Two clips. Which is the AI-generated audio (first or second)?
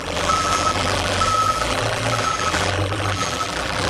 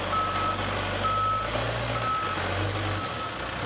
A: first